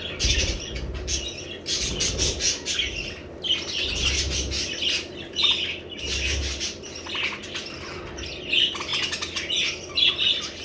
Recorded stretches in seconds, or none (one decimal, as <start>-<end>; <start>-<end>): 0.0-10.6